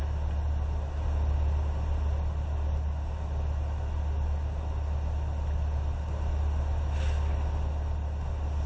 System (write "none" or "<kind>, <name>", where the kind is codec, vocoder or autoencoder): none